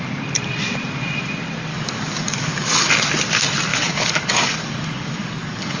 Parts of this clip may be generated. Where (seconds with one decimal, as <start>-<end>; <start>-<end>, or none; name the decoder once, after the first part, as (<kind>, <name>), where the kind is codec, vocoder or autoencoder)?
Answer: 1.7-2.9 (codec, DAC); 3.7-5.8